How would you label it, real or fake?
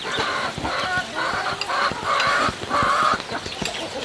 real